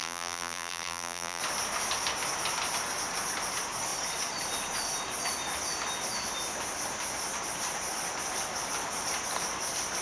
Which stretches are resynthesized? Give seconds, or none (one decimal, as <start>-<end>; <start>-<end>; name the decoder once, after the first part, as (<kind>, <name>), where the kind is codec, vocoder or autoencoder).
0.0-1.4 (vocoder, BigVGAN v2)